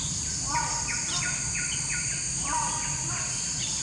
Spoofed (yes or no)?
no